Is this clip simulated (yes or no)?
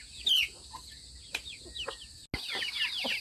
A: no